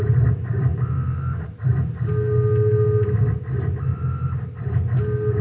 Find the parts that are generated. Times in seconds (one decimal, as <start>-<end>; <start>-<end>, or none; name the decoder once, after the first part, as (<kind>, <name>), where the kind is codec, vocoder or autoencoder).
none